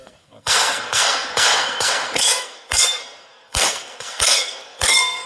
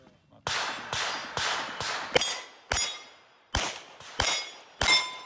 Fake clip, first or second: first